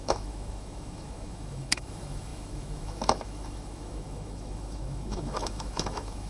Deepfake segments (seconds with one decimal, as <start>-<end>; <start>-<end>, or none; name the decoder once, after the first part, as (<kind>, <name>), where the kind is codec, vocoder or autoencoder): 0.0-6.3 (autoencoder, DAC-VAE)